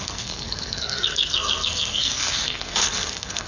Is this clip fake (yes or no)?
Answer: yes